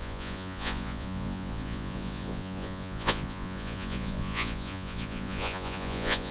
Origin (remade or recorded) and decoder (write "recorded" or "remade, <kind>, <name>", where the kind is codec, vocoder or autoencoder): remade, vocoder, Vocos